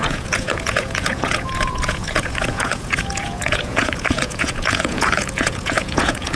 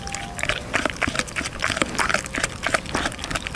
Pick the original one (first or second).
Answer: second